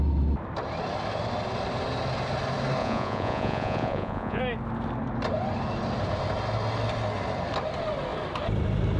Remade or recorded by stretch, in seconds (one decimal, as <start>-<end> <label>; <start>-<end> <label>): 0.0-2.8 recorded; 2.8-4.4 remade; 4.4-9.0 recorded

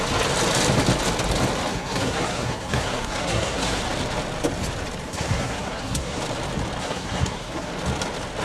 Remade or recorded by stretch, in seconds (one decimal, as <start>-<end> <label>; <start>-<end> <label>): 0.0-1.7 recorded; 1.7-3.8 remade; 3.8-5.1 recorded; 5.1-6.2 remade; 6.2-6.8 recorded; 6.8-7.7 remade; 7.7-8.4 recorded

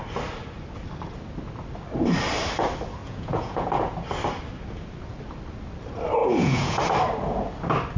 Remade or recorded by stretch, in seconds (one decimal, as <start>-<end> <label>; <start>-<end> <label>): 0.0-3.0 recorded; 3.0-3.7 remade; 3.7-6.2 recorded; 6.2-6.8 remade; 6.8-8.0 recorded

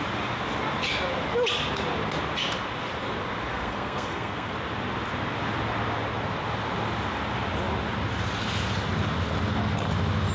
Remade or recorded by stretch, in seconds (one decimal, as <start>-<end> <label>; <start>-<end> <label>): 0.0-3.5 recorded; 3.5-4.5 remade; 4.5-10.3 recorded

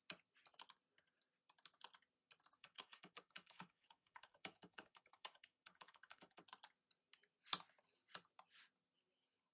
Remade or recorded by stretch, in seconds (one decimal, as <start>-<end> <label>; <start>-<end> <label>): 0.0-2.6 recorded; 2.6-6.4 remade; 6.4-9.5 recorded

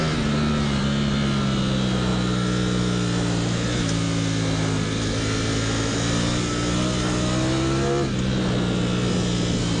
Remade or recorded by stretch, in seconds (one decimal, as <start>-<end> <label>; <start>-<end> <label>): 0.0-9.8 recorded